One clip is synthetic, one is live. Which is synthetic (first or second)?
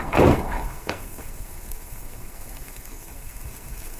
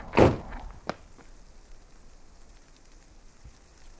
first